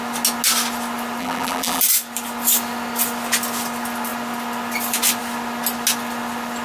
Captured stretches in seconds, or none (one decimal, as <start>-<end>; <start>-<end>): 0.0-1.2; 1.8-6.6